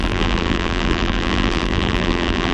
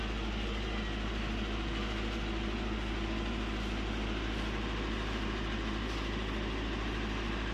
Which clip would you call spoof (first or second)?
first